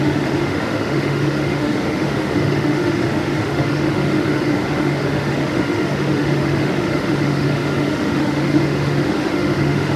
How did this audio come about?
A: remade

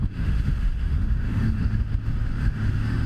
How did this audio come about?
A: remade